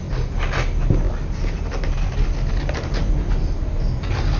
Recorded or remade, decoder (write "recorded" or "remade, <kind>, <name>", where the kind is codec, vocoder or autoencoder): recorded